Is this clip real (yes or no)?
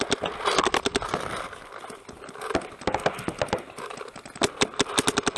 yes